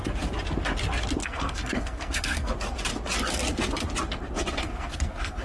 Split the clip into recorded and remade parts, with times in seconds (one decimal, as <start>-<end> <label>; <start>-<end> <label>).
0.0-1.2 recorded; 1.2-2.5 remade; 2.5-4.6 recorded; 4.6-5.4 remade